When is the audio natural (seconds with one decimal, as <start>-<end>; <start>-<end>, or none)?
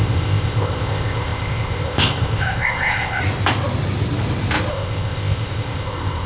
3.2-4.7